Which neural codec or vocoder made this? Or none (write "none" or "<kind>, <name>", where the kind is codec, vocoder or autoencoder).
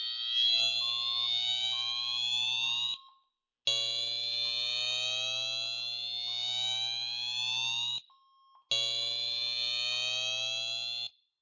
none